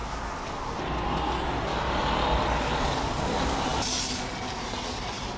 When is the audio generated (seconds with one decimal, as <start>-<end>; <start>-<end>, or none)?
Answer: none